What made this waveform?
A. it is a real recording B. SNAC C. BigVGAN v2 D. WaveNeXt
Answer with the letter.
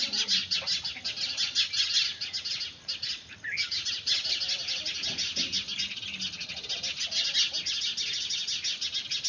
A